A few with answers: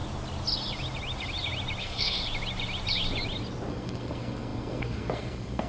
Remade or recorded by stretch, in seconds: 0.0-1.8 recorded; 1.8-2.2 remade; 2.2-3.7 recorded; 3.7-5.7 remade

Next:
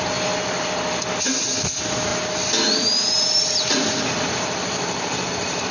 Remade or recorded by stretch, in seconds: 0.0-5.7 recorded

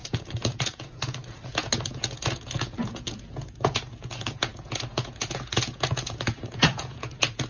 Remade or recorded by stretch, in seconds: 0.0-7.5 remade

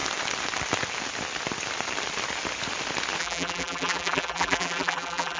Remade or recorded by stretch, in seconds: 0.0-3.2 recorded; 3.2-5.4 remade

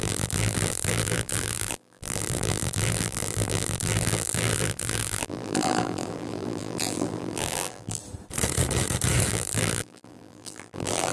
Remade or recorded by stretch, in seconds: 0.0-8.0 remade; 8.0-9.3 recorded; 9.3-11.1 remade